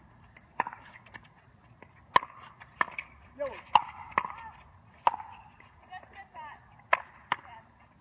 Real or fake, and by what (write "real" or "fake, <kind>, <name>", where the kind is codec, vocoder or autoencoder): real